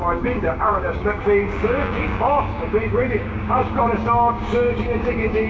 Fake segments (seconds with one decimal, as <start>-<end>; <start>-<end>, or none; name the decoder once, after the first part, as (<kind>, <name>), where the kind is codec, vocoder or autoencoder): 0.0-5.5 (codec, DAC)